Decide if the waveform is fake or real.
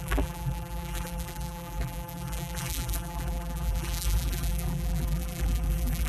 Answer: fake